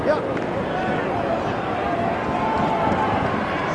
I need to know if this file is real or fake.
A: real